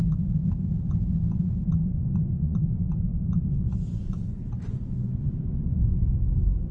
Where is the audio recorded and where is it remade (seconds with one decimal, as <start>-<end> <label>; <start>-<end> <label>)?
0.0-1.8 recorded; 1.8-2.6 remade; 2.6-3.1 recorded; 3.1-5.8 remade; 5.8-6.7 recorded

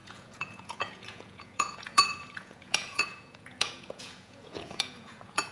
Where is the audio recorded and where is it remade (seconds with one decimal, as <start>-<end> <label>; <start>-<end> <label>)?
0.0-5.5 remade

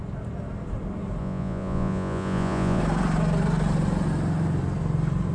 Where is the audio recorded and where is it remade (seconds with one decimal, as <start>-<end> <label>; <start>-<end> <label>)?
0.0-1.2 recorded; 1.2-2.8 remade; 2.8-5.3 recorded

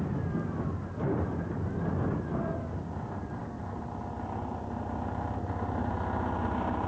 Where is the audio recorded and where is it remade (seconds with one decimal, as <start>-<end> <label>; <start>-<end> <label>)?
0.0-6.9 recorded

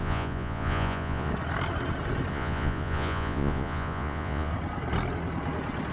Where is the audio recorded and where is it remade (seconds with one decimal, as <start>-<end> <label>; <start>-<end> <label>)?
0.0-1.3 remade; 1.3-2.3 recorded; 2.3-4.5 remade; 4.5-5.9 recorded